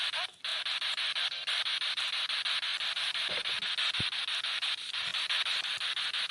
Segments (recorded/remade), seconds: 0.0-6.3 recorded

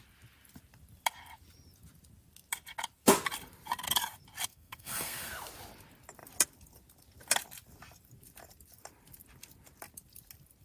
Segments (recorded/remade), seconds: 0.0-4.5 recorded; 4.5-5.3 remade; 5.3-10.6 recorded